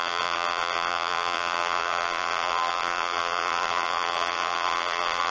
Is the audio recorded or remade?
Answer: remade